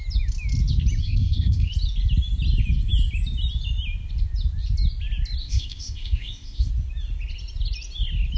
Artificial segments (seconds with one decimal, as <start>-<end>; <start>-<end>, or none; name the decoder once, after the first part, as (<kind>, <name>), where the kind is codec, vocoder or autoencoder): 1.0-1.7 (codec, ZipCodec); 5.4-6.7